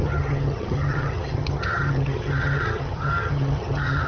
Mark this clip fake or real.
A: fake